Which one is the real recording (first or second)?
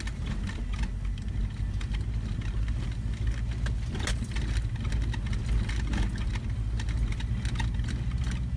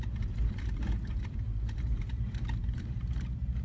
first